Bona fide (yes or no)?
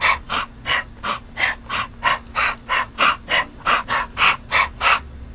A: yes